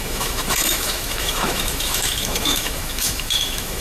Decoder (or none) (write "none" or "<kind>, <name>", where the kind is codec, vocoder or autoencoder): autoencoder, DAC-VAE